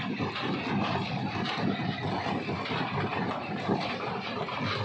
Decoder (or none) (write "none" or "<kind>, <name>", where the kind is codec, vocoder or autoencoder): none